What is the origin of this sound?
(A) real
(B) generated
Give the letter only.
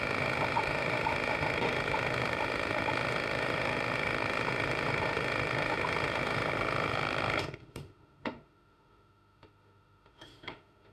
B